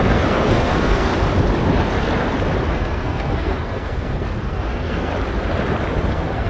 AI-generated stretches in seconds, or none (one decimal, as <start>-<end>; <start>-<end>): 0.0-1.1; 2.7-5.1; 6.1-6.5